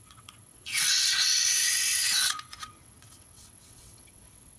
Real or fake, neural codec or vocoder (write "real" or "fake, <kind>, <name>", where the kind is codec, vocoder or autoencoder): fake, vocoder, WaveNeXt